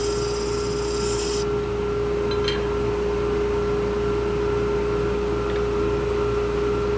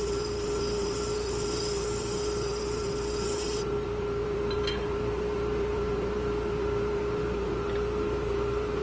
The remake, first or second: second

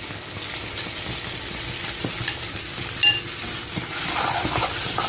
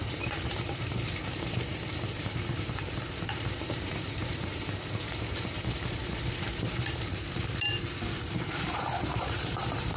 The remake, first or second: second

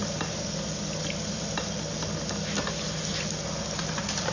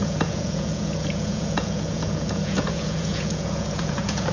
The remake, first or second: second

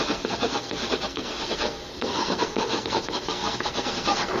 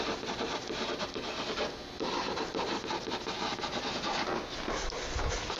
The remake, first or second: first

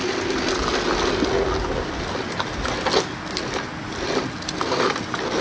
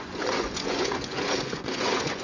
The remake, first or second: second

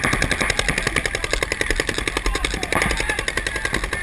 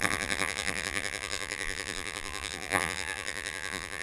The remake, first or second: second